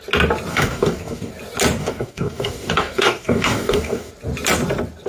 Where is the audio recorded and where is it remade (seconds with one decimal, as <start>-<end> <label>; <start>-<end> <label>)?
0.0-0.5 recorded; 0.5-1.3 remade; 1.3-1.8 recorded; 1.8-4.1 remade; 4.1-5.1 recorded